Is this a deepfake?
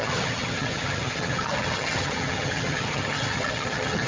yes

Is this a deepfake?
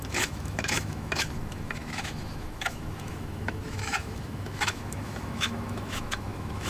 yes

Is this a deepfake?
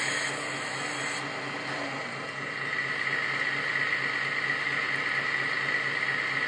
no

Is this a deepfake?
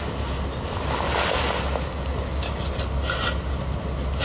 no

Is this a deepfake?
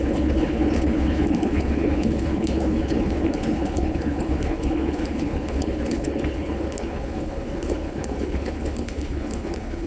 yes